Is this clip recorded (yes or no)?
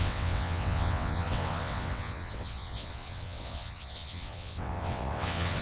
no